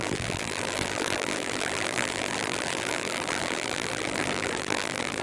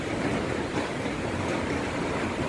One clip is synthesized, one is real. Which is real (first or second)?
second